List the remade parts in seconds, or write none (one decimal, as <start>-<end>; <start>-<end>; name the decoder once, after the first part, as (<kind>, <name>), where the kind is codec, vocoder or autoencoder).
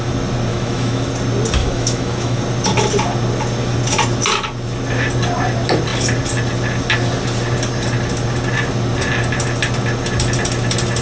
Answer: 0.5-1.1 (autoencoder, DAC-VAE); 1.6-2.4